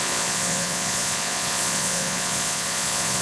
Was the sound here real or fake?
fake